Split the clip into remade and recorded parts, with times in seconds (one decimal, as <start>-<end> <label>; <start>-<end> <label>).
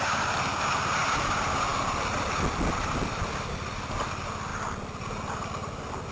0.0-6.1 recorded